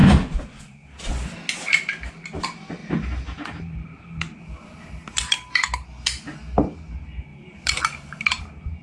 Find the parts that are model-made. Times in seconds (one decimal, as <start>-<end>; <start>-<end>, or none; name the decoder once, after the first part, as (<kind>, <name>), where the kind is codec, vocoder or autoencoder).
0.0-1.0 (vocoder, BigVGAN v2); 2.8-4.9; 7.3-8.4